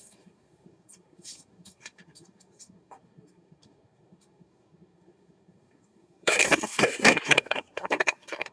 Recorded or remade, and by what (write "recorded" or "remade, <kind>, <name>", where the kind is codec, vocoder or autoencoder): remade, codec, SNAC